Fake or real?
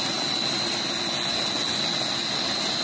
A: real